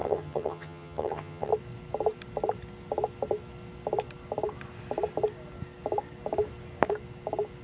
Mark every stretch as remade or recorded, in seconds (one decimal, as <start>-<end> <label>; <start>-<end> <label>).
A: 0.0-1.5 remade; 1.5-7.6 recorded